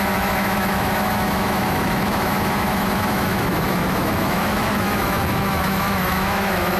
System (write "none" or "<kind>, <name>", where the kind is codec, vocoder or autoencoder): autoencoder, DAC-VAE